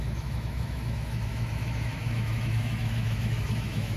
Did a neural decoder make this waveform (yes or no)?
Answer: yes